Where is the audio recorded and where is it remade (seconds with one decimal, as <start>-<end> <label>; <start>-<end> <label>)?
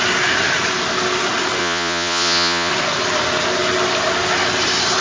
0.0-1.6 recorded; 1.6-2.7 remade; 2.7-5.0 recorded